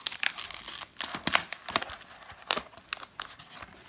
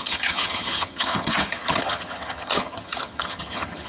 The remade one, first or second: second